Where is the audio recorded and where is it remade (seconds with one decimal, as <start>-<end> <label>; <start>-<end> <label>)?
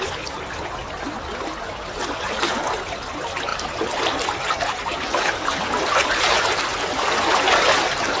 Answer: 0.0-1.7 recorded; 1.7-2.5 remade; 2.5-3.5 recorded; 3.5-8.2 remade